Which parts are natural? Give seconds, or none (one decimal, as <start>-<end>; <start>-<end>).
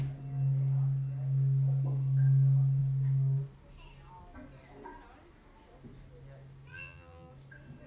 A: 0.0-6.7; 7.3-7.9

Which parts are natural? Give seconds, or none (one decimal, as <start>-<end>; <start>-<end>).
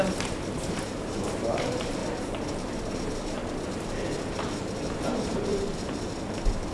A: 2.0-5.1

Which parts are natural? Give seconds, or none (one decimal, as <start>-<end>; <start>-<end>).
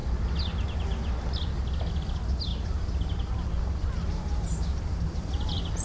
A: 0.0-1.9; 2.5-4.1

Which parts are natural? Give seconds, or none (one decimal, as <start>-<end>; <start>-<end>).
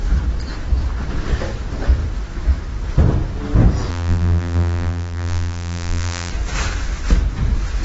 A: 0.0-3.9; 6.3-7.8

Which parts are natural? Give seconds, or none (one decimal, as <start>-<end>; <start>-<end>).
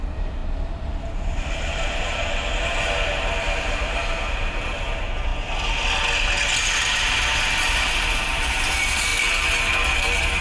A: 0.4-1.0; 5.3-6.6; 9.1-9.7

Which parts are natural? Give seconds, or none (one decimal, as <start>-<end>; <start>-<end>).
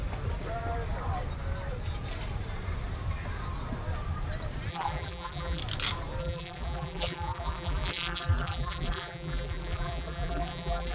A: 0.0-4.7; 5.6-6.2